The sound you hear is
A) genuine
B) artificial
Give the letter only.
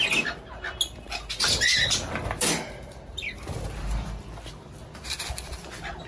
A